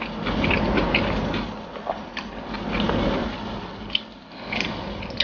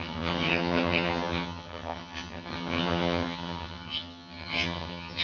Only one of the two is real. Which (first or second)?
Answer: first